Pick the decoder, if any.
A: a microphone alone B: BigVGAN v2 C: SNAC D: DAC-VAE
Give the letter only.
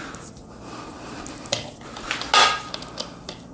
A